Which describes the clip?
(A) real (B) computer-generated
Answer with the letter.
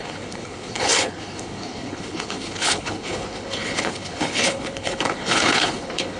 B